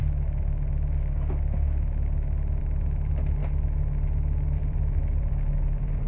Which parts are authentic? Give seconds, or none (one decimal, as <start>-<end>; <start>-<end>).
0.0-3.4